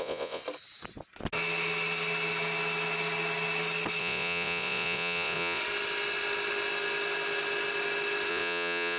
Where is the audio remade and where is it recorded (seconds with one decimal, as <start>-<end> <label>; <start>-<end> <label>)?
0.0-0.4 remade; 0.4-4.0 recorded; 4.0-5.6 remade; 5.6-8.3 recorded; 8.3-9.0 remade